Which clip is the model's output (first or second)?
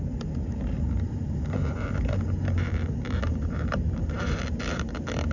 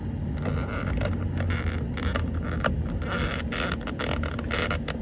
first